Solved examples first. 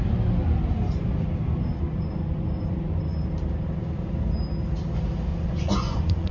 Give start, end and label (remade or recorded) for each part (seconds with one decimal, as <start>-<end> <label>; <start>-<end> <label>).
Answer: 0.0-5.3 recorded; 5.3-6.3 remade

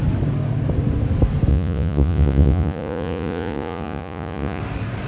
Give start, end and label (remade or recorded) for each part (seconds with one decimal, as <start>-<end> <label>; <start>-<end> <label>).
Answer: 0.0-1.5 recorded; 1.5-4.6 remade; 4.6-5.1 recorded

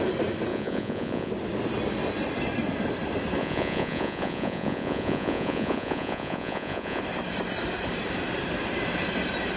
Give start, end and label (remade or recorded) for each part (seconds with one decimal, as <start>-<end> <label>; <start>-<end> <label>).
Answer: 0.0-0.5 recorded; 0.5-1.3 remade; 1.3-3.4 recorded; 3.4-7.0 remade; 7.0-9.6 recorded